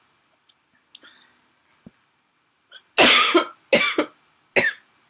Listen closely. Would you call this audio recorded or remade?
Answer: recorded